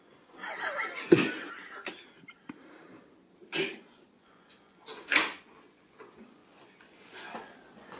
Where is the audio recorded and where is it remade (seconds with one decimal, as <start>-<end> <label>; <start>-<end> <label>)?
0.0-0.4 remade; 0.4-3.9 recorded; 3.9-8.0 remade